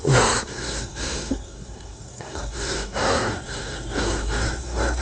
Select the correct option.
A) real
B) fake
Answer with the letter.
B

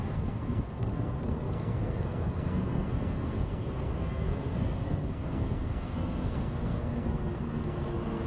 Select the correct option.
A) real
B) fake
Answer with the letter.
B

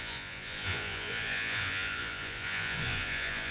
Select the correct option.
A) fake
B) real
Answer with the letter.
A